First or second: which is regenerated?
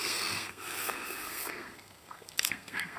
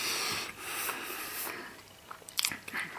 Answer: first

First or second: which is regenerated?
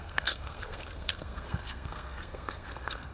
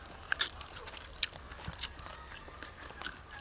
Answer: first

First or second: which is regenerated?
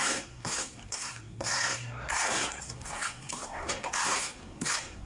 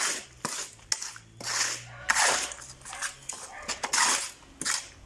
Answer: first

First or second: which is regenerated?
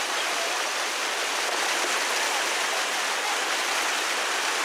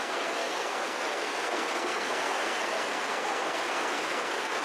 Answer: second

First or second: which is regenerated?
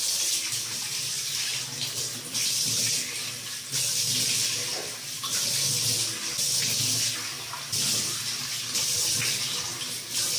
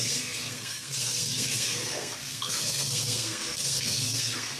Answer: second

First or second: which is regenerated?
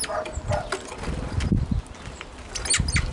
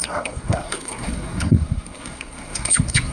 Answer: second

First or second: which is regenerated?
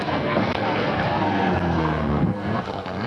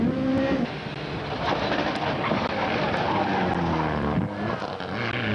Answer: first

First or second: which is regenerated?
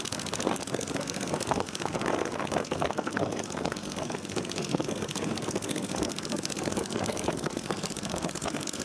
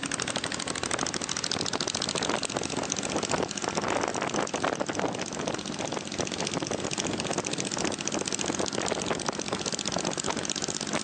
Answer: first